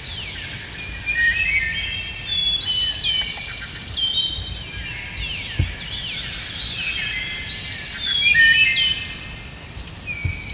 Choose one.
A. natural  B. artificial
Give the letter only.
A